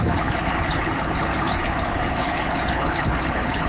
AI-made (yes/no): yes